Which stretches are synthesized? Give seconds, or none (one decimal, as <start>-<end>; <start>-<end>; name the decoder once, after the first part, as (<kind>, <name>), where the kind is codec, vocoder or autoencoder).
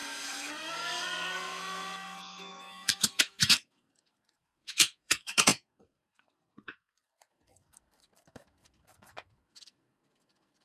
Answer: 0.0-10.6 (codec, SNAC)